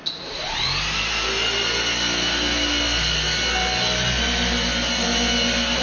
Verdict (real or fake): real